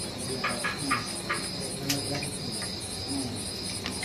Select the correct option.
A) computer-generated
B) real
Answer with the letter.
B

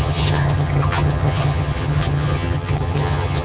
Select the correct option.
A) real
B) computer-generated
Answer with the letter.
B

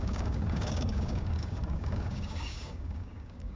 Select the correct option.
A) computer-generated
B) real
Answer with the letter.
A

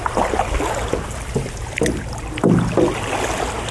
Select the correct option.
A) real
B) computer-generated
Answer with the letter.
A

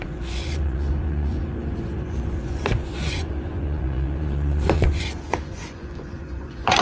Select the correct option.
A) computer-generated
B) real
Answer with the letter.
A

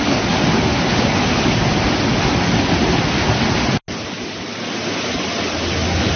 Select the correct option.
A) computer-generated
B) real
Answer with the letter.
B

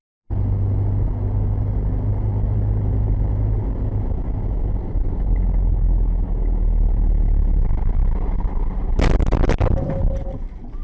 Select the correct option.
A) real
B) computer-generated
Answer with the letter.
A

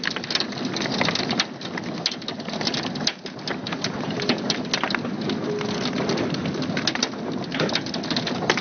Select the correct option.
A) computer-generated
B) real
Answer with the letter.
B